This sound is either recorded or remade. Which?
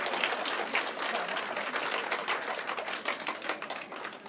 recorded